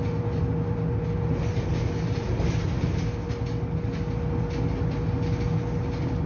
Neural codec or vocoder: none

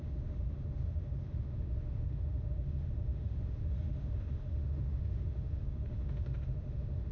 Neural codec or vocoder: autoencoder, DAC-VAE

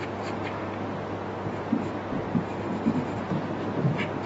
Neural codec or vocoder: none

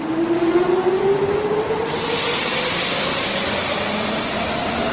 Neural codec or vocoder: none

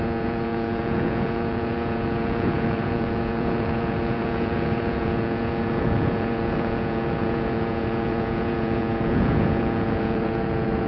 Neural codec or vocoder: vocoder, Vocos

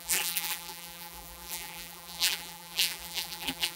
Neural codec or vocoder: vocoder, BigVGAN v2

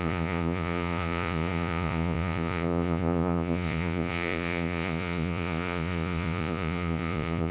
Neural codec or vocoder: vocoder, Vocos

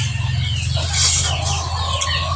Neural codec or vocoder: none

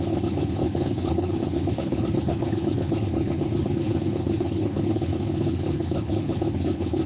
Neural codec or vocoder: codec, HILCodec